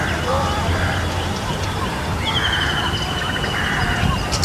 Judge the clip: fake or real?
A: real